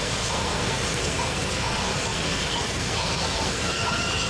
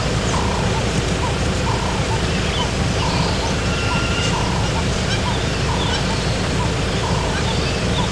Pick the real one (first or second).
second